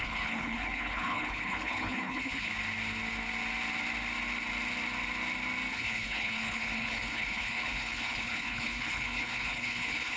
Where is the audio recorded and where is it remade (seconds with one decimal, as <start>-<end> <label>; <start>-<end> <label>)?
0.0-2.5 remade; 2.5-5.7 recorded; 5.7-10.2 remade